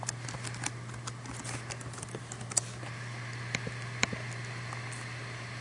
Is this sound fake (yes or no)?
no